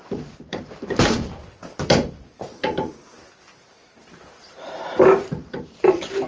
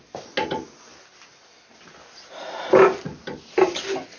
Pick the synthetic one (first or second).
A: first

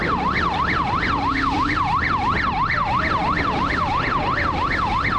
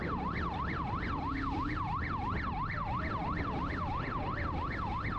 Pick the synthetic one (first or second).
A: second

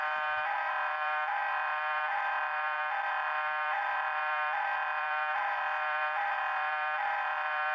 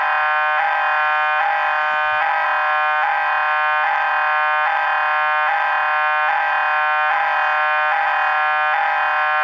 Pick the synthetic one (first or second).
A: first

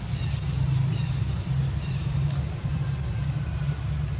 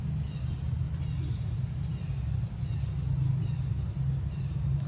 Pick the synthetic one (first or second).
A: first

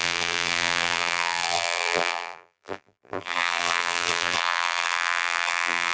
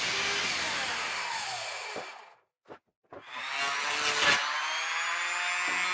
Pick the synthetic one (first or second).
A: first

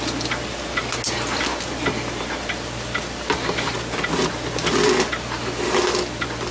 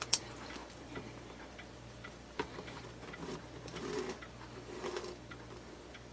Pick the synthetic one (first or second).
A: second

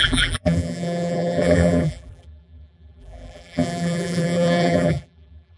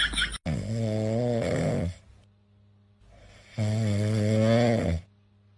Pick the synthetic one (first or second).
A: first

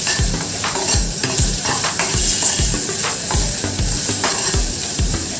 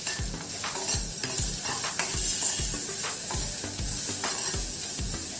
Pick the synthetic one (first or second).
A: first